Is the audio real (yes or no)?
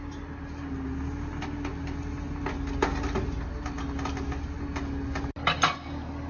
yes